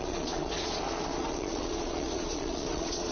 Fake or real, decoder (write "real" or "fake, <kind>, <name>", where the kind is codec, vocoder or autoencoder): fake, vocoder, Vocos